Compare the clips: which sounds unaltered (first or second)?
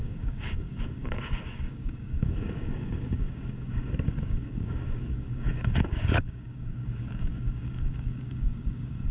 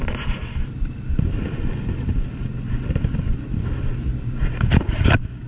second